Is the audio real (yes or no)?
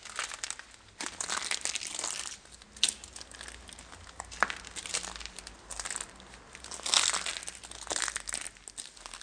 yes